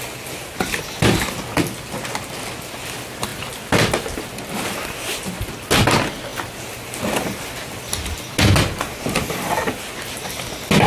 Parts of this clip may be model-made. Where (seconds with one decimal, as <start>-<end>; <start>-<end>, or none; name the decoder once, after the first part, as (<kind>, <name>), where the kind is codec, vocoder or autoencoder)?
none